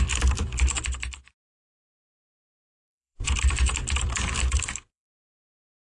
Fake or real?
fake